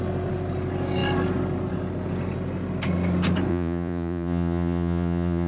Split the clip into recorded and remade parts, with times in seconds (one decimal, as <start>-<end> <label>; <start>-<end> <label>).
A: 0.0-3.5 recorded; 3.5-5.5 remade